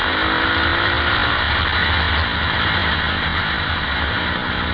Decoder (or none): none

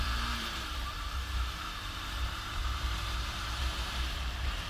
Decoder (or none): vocoder, BigVGAN v2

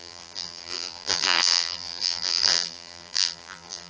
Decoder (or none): vocoder, BigVGAN v2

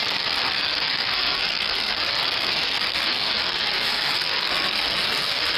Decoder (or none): codec, SNAC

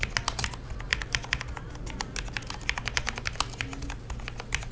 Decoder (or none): none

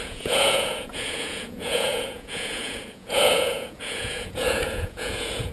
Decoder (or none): vocoder, Vocos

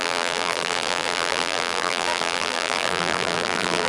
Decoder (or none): vocoder, BigVGAN v2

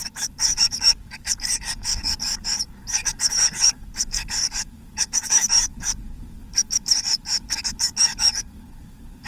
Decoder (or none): codec, DAC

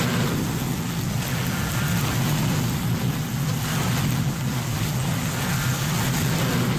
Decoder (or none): none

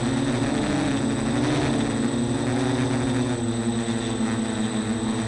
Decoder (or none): none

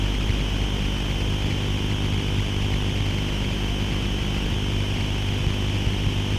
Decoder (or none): none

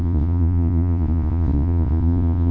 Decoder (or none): vocoder, Vocos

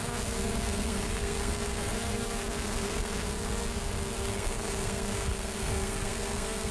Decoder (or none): codec, SNAC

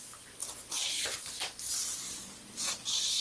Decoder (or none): none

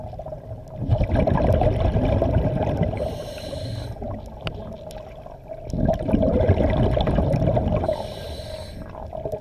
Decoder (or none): none